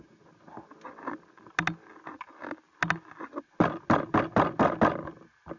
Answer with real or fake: real